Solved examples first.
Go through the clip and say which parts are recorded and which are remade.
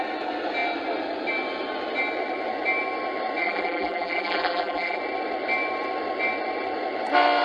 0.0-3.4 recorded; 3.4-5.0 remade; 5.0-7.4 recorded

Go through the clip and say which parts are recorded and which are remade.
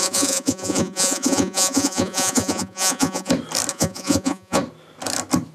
0.0-3.3 remade; 3.3-3.7 recorded; 3.7-4.6 remade; 4.6-5.5 recorded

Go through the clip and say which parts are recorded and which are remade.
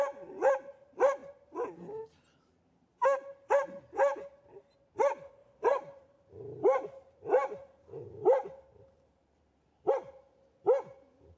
0.0-5.4 recorded; 5.4-9.9 remade; 9.9-11.4 recorded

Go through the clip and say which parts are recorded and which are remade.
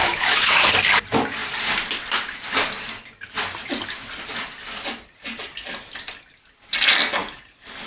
0.0-0.7 remade; 0.7-7.9 recorded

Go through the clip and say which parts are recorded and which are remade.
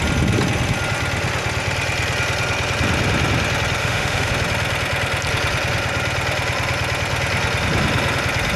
0.0-3.8 recorded; 3.8-4.3 remade; 4.3-8.6 recorded